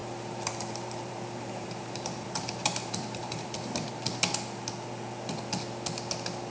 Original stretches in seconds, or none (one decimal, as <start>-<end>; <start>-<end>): 3.9-6.5